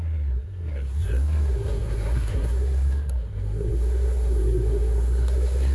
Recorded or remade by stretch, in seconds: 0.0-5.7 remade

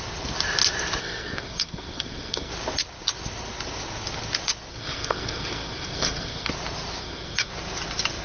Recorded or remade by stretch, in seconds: 0.0-1.0 recorded; 1.0-2.5 remade; 2.5-4.7 recorded; 4.7-6.5 remade; 6.5-7.0 recorded; 7.0-7.5 remade; 7.5-8.2 recorded